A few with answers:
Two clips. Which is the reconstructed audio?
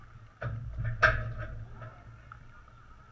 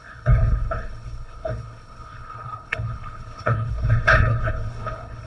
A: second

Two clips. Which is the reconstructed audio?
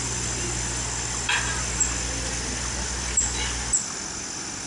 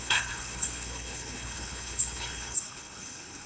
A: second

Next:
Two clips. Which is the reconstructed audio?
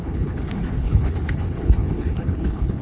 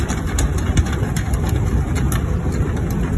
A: first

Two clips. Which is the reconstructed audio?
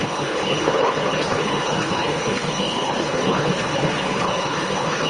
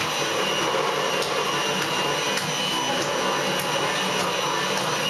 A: first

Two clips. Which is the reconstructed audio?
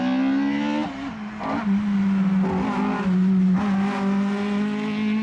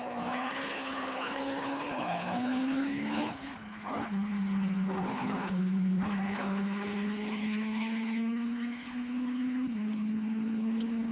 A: second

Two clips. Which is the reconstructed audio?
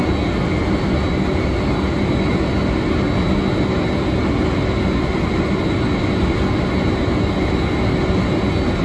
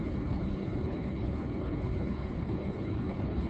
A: second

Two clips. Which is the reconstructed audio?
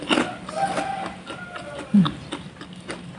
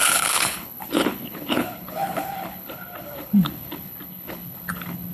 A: second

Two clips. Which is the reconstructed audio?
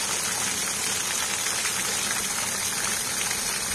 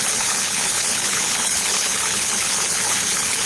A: second